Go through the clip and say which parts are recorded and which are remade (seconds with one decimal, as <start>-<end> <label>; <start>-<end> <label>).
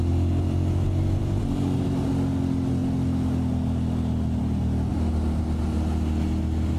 0.0-1.2 recorded; 1.2-2.1 remade; 2.1-6.8 recorded